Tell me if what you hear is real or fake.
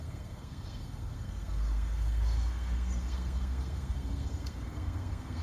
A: fake